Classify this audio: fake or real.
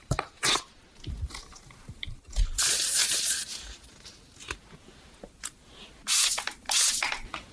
real